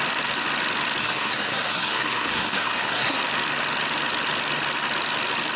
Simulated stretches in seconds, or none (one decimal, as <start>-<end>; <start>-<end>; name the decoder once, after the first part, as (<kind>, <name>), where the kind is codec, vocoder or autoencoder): 1.0-3.2 (codec, SNAC)